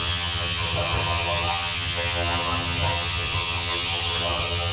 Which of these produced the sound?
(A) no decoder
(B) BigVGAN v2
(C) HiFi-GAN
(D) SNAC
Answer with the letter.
C